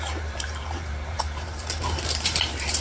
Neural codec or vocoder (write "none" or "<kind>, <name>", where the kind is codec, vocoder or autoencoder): vocoder, BigVGAN v2